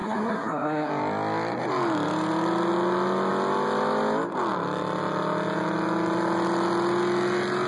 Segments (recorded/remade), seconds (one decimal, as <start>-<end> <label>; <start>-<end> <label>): 0.0-0.9 remade; 0.9-7.7 recorded